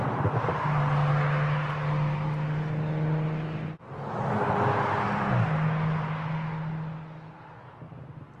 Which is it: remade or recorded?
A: recorded